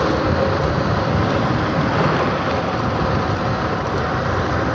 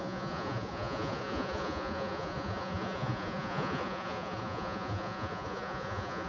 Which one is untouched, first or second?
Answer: first